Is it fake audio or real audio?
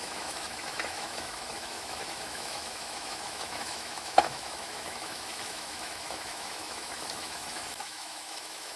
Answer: fake